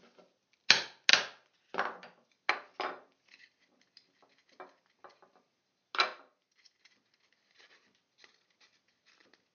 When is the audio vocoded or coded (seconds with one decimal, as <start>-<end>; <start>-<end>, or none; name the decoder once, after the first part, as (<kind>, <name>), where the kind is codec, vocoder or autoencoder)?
none